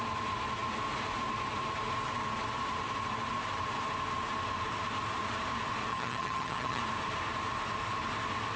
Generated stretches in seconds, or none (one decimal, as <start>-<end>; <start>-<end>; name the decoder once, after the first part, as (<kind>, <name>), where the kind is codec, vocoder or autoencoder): 5.9-6.8 (vocoder, HiFi-GAN)